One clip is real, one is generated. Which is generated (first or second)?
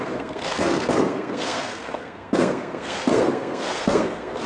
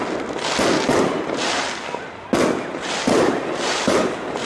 first